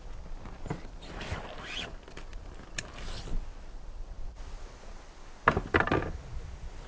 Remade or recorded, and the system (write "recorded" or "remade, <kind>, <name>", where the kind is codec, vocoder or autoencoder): recorded